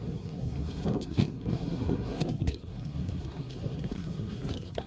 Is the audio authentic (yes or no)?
no